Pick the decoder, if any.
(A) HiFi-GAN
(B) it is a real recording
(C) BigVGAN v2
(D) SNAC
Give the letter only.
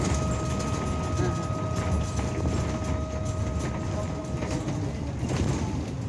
B